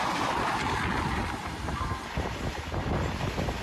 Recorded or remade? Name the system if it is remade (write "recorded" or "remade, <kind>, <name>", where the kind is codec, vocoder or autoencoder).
recorded